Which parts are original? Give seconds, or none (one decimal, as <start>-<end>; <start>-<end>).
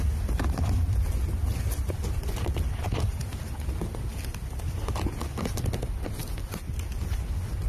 0.0-4.1; 5.1-6.2; 7.2-7.7